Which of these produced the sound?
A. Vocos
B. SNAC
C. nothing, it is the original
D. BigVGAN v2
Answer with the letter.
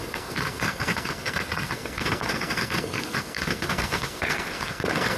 B